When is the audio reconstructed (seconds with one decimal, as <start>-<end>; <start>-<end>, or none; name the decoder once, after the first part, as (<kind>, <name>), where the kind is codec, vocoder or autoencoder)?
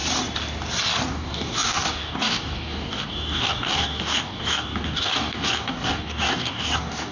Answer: 1.1-7.1 (codec, DAC)